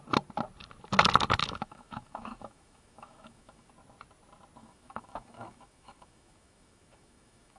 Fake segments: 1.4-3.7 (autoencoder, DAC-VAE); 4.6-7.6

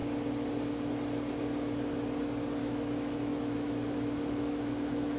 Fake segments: 2.6-5.2 (autoencoder, DAC-VAE)

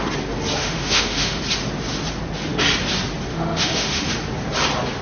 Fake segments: 0.6-1.4 (autoencoder, DAC-VAE); 3.3-4.1

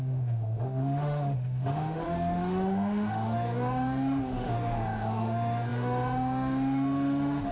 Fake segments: 0.0-7.5 (autoencoder, DAC-VAE)

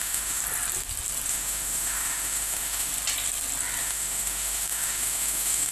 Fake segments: 0.0-0.4 (autoencoder, DAC-VAE); 1.3-2.9; 3.8-5.7

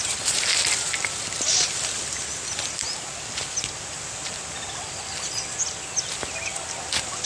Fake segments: none

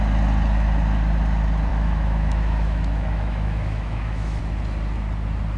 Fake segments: 1.7-4.4 (autoencoder, DAC-VAE)

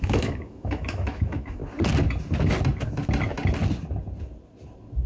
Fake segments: 0.0-1.6 (autoencoder, DAC-VAE)